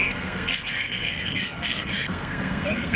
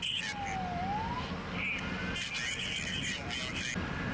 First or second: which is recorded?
second